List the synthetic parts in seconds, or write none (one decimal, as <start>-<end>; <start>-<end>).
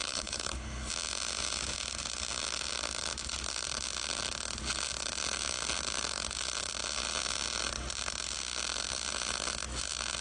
0.0-0.9